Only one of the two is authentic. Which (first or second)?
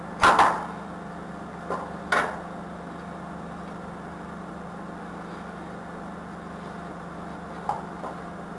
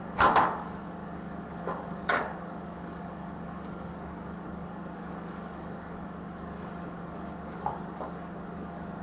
first